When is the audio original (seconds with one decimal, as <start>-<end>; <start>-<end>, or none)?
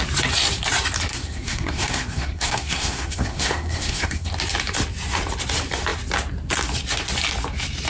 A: 0.0-1.1; 4.3-7.9